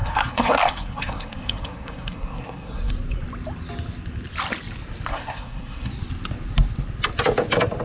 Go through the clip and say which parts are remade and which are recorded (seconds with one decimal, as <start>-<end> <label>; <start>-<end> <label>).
0.0-2.9 remade; 2.9-5.1 recorded; 5.1-5.9 remade; 5.9-7.8 recorded